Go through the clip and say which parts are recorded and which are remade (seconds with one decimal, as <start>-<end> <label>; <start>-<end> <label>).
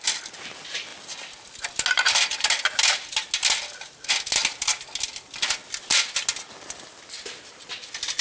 0.0-8.2 recorded